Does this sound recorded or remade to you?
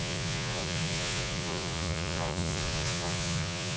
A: remade